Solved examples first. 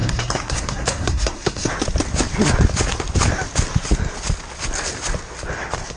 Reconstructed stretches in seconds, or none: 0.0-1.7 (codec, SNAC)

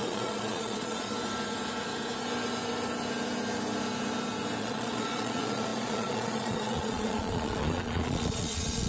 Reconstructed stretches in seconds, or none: 0.0-1.1 (vocoder, Vocos); 4.6-8.9

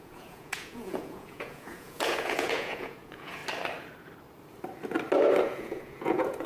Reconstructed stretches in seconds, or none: 0.0-3.4 (vocoder, Vocos); 5.4-6.5

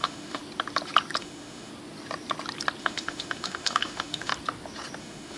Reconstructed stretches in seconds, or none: 0.0-0.4 (autoencoder, DAC-VAE); 1.2-1.7; 2.8-4.3; 5.0-5.4

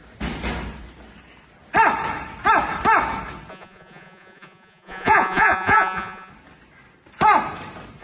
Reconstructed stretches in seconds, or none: 3.5-6.3 (vocoder, Vocos)